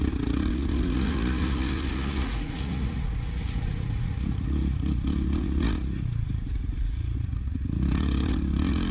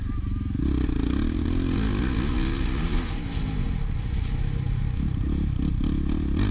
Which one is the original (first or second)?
second